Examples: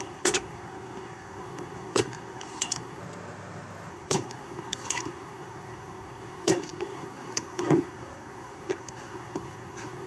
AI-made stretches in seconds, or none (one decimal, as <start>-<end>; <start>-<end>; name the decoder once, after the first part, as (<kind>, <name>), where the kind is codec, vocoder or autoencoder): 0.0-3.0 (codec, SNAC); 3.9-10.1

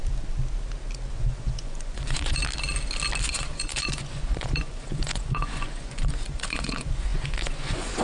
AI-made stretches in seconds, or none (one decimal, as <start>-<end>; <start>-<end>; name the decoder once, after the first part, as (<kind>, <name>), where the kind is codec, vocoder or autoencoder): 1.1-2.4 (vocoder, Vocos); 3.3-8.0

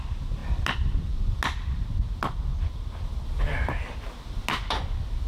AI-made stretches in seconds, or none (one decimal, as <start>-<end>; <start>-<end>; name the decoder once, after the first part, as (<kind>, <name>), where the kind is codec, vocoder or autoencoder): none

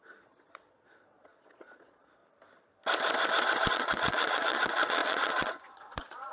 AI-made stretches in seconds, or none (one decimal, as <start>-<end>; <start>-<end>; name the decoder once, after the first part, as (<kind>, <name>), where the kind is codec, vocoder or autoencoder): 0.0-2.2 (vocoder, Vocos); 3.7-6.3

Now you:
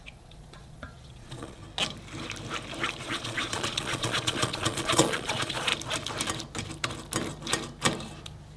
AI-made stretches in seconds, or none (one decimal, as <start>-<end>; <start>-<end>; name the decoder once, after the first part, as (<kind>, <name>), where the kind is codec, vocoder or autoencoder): 0.0-1.6 (vocoder, Vocos); 3.0-5.7